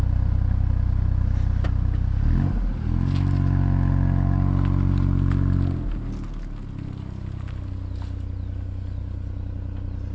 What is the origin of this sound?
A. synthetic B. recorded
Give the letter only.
B